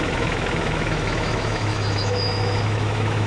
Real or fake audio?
fake